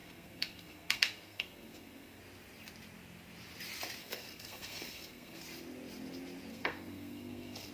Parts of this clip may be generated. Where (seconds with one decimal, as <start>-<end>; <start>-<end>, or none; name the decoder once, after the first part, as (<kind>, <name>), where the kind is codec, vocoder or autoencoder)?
0.0-2.2 (codec, SNAC); 4.0-5.4; 6.5-7.7